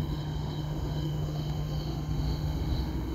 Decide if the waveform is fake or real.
fake